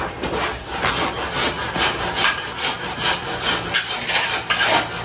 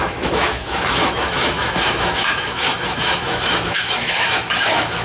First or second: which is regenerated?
second